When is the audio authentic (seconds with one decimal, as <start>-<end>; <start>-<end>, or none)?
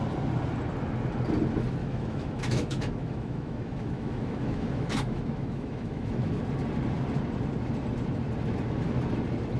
0.0-1.8; 6.4-9.6